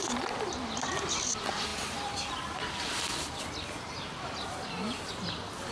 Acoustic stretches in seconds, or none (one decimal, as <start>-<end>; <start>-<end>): 0.0-5.7